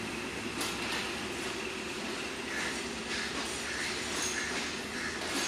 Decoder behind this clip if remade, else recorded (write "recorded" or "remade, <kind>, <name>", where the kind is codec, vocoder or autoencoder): recorded